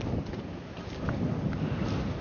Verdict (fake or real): fake